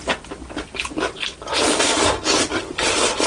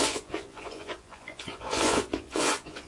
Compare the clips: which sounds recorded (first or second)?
first